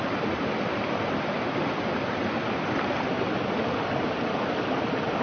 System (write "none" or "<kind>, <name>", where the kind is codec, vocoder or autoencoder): none